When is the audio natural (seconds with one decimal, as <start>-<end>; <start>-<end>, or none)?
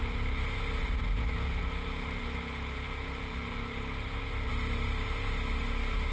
0.0-6.1